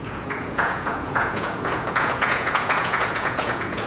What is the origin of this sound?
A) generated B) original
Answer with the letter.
A